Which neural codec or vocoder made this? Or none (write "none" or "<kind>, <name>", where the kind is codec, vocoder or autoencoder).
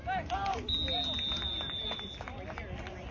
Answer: none